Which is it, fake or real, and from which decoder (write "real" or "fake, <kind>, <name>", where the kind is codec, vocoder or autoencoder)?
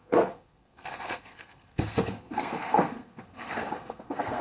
fake, codec, SNAC